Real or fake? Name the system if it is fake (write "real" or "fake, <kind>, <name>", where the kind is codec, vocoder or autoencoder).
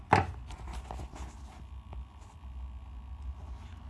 real